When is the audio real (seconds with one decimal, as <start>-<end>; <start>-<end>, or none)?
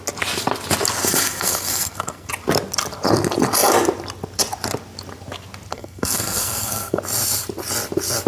0.0-1.0; 2.3-5.7; 7.0-8.3